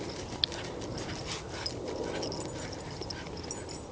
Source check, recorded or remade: recorded